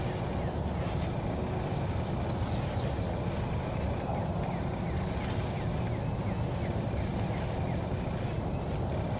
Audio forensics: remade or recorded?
recorded